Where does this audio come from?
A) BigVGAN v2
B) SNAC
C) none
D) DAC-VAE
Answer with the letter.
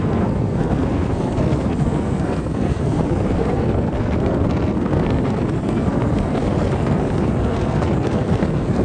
B